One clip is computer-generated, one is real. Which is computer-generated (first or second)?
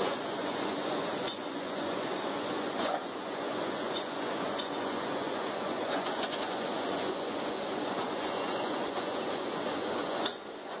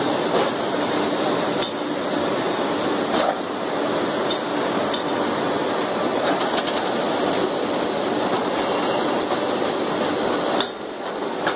first